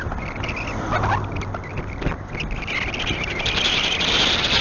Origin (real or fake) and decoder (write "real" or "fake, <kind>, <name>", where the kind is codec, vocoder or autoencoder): real